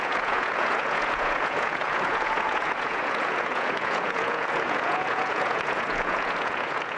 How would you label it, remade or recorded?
remade